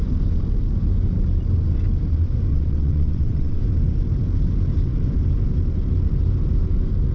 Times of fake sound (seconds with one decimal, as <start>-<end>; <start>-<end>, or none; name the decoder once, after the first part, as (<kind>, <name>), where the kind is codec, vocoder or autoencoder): 2.5-3.6 (vocoder, WaveNeXt)